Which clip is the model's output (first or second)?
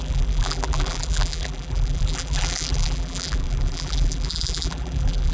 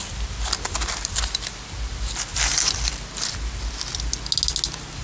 first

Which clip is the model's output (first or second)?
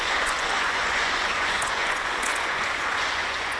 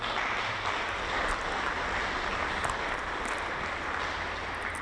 first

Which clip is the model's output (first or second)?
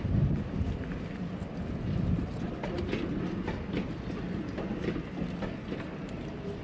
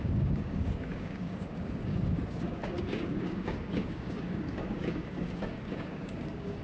second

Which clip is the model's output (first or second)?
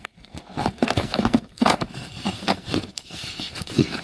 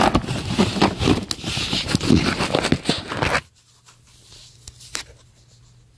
first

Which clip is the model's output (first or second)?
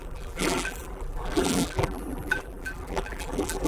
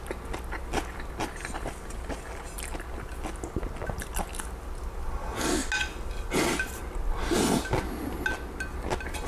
first